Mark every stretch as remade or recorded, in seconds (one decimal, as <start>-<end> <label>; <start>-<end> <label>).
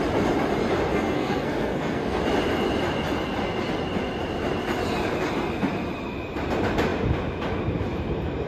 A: 0.0-0.9 recorded; 0.9-2.2 remade; 2.2-8.5 recorded